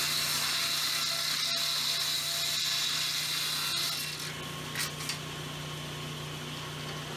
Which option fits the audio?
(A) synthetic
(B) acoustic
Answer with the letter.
B